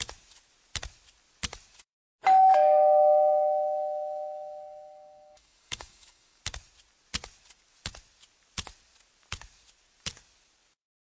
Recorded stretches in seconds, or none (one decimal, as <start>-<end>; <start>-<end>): 0.0-2.4; 6.4-11.0